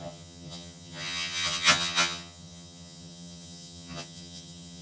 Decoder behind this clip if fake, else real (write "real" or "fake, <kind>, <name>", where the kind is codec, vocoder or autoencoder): fake, vocoder, HiFi-GAN